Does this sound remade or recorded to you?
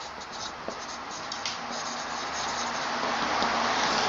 recorded